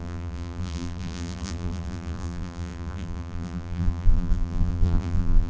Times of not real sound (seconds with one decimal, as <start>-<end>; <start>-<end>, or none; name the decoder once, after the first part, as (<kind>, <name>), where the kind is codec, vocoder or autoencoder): 0.0-5.5 (vocoder, BigVGAN v2)